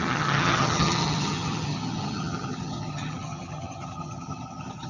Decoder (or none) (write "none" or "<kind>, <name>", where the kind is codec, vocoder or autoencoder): vocoder, HiFi-GAN